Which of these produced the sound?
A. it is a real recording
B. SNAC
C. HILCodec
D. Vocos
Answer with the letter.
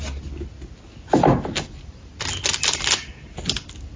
A